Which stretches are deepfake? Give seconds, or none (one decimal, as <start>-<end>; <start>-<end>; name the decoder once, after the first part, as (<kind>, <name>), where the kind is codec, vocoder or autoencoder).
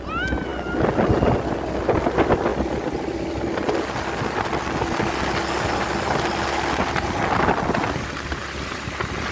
none